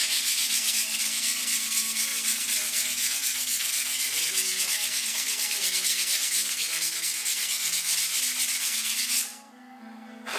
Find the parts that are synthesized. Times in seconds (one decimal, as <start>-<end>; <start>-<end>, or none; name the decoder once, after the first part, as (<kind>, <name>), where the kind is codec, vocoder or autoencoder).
0.0-7.9 (codec, SNAC); 8.6-10.4